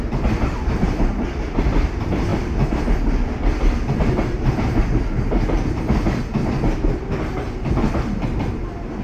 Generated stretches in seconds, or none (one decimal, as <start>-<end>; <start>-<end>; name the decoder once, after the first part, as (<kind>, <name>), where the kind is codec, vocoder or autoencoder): none